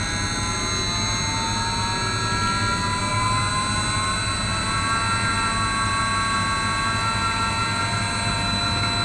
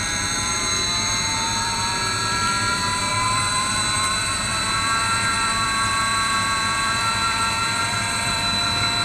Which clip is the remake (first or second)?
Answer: second